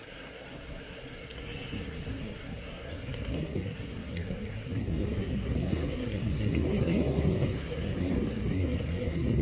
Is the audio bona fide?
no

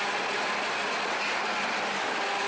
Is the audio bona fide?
yes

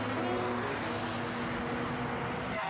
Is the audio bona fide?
yes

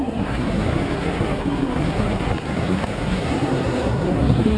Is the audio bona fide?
no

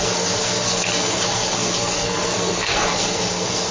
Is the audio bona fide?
no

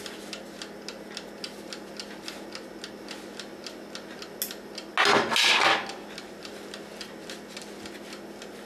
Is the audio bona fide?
yes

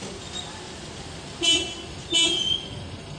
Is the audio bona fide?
yes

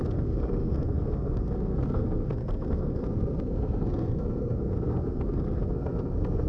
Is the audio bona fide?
no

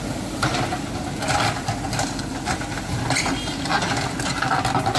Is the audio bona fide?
yes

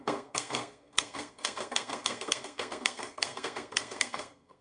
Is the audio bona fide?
no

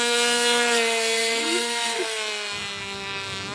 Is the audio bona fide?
no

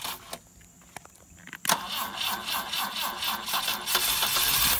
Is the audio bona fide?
yes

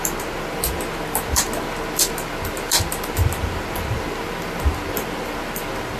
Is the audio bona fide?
yes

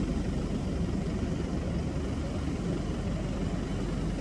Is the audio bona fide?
yes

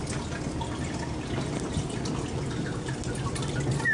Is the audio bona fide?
yes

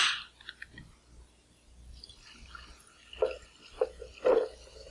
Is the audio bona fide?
yes